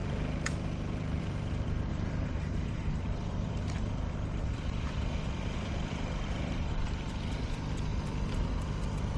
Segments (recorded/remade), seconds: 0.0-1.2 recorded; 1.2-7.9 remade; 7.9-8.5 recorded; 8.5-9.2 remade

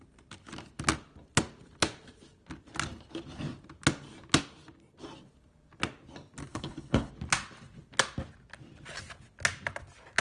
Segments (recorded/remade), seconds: 0.0-6.5 recorded; 6.5-7.1 remade; 7.1-10.2 recorded

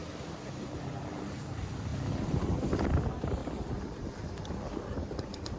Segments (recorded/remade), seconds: 0.0-1.1 recorded; 1.1-3.4 remade; 3.4-4.4 recorded; 4.4-5.6 remade